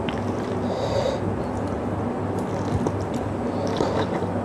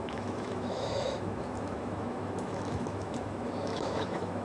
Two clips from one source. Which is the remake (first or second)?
second